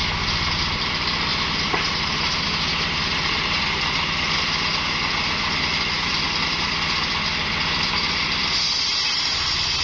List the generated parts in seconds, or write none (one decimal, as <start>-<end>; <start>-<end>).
1.3-3.6